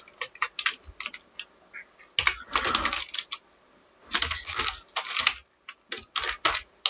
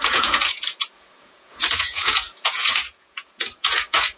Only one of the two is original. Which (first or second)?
first